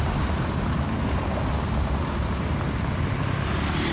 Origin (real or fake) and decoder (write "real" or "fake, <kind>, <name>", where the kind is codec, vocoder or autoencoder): real